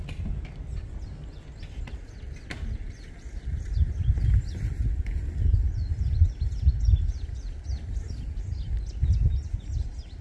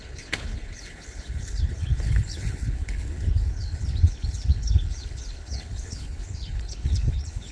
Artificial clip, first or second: second